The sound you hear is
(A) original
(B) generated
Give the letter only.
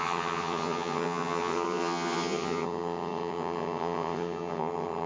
B